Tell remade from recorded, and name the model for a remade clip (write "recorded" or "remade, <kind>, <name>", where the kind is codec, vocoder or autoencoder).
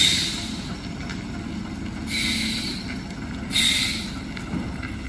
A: recorded